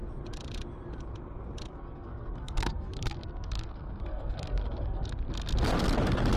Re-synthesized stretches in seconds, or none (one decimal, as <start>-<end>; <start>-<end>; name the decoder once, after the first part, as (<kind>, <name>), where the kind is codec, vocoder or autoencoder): 1.7-5.1 (codec, SNAC)

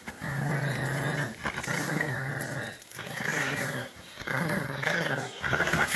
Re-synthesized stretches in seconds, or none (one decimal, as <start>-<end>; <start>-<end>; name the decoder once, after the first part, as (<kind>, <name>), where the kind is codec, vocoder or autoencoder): 0.0-0.5 (codec, SNAC); 1.8-2.3; 2.8-6.0

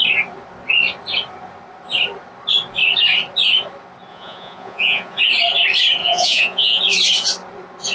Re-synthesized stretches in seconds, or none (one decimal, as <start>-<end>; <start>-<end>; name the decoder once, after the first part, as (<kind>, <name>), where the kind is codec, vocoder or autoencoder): 4.1-5.2 (vocoder, Vocos); 6.0-6.8

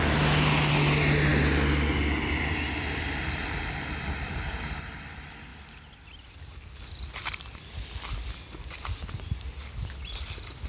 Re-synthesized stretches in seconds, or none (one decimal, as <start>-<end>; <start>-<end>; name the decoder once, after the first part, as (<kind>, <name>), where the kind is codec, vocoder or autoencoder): none

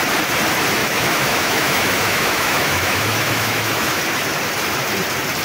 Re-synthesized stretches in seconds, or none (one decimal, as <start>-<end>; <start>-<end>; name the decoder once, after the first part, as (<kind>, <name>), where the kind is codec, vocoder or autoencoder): 0.8-4.0 (autoencoder, DAC-VAE)

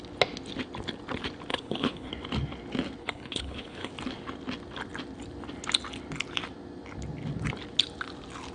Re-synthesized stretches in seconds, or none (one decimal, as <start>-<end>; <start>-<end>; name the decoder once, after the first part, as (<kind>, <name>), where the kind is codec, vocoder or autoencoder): 1.5-2.1 (codec, HILCodec); 3.0-3.9

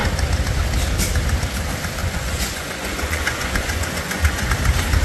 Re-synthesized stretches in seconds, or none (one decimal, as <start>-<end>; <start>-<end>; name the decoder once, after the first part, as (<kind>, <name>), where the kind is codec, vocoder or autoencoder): 2.0-4.5 (vocoder, Vocos)